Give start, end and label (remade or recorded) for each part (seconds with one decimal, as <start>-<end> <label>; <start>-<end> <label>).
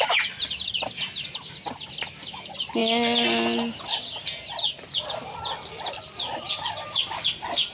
0.0-7.7 recorded